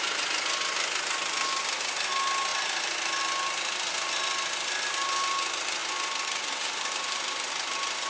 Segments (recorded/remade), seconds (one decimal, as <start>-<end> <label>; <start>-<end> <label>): 0.0-8.1 recorded

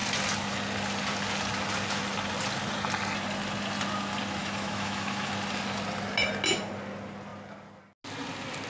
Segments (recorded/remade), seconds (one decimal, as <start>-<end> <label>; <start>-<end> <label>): 0.0-4.4 recorded; 4.4-5.3 remade; 5.3-8.7 recorded